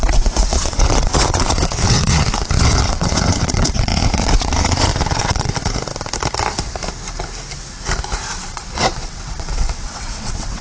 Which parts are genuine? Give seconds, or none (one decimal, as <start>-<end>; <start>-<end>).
5.5-8.3